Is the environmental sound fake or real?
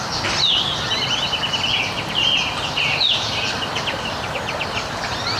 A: real